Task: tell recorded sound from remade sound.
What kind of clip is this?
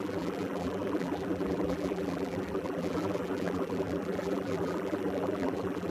remade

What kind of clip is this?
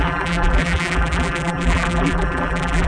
remade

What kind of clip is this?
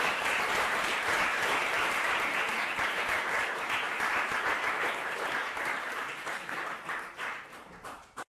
remade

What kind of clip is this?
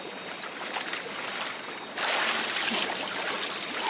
recorded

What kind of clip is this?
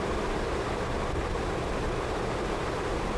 recorded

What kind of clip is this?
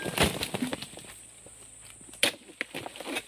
recorded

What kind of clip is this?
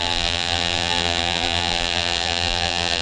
remade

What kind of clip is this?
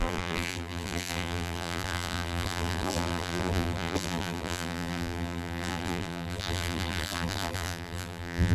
remade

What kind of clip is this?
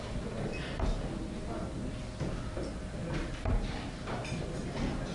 recorded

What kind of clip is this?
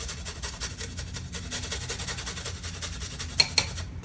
recorded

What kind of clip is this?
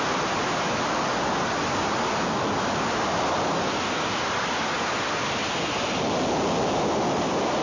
recorded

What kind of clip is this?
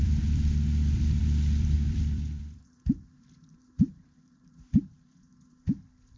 remade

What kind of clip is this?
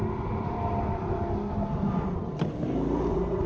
recorded